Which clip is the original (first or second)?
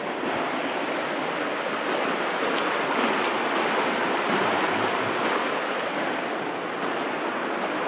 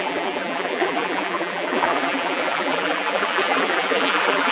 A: first